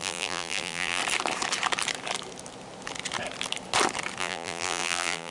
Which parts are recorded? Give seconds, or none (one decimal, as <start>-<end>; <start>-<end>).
1.0-4.2